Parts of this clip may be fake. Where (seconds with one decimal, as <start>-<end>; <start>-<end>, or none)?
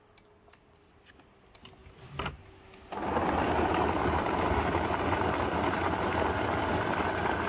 none